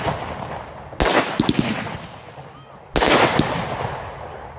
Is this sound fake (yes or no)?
no